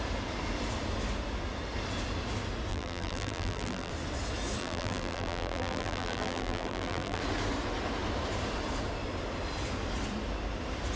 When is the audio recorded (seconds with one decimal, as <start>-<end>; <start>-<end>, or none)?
0.0-2.7; 3.9-4.6; 7.2-11.0